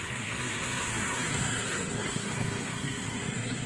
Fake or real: fake